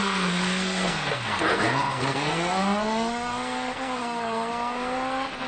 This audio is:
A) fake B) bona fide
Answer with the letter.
A